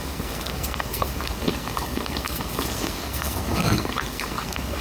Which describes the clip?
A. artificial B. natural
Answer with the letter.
A